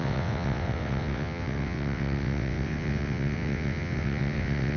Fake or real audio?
fake